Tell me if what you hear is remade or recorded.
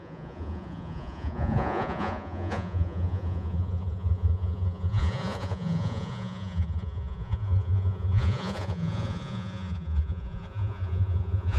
remade